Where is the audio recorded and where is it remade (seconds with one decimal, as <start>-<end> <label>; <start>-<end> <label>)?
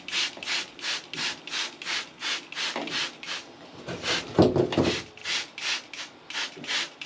0.0-7.1 recorded